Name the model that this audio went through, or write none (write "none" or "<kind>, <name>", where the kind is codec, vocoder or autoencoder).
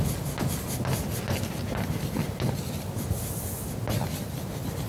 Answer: none